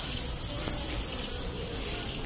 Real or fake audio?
real